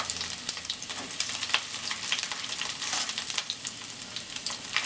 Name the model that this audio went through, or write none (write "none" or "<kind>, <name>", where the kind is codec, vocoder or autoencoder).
none